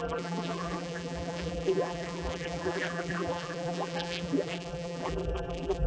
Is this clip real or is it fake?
fake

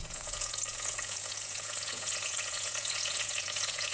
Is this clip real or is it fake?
fake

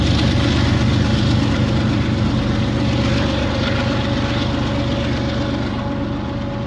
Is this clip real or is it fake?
real